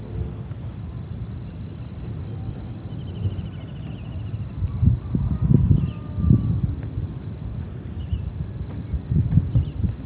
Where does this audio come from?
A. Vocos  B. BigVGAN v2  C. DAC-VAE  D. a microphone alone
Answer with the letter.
B